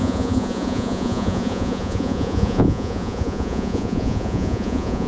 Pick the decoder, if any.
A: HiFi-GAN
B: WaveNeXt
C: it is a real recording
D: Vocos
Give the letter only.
D